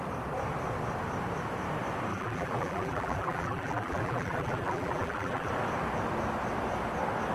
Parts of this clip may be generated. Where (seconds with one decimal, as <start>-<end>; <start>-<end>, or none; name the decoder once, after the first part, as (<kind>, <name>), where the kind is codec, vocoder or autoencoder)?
2.1-5.5 (vocoder, BigVGAN v2)